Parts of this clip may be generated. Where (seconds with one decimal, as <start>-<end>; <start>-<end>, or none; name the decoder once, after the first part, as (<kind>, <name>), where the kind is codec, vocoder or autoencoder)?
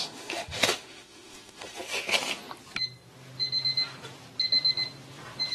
0.0-2.0 (autoencoder, DAC-VAE)